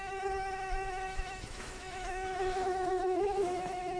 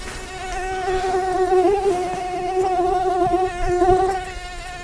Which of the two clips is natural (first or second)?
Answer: second